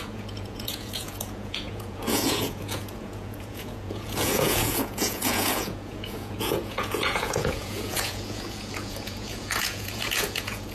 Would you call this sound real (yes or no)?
no